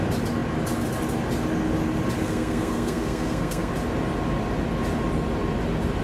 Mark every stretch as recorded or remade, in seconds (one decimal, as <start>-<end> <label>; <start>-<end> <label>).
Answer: 0.0-2.2 recorded; 2.2-3.7 remade; 3.7-6.0 recorded